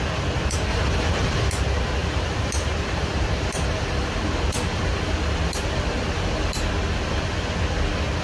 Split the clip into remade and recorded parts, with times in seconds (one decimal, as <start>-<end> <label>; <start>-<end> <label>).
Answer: 0.0-0.7 recorded; 0.7-1.5 remade; 1.5-2.0 recorded; 2.0-6.6 remade; 6.6-8.2 recorded